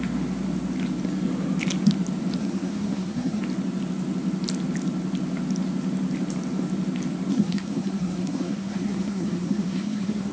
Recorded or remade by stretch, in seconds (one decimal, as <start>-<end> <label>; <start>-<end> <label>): 0.0-2.4 recorded; 2.4-3.4 remade; 3.4-7.3 recorded; 7.3-10.3 remade